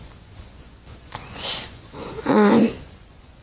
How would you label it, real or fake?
fake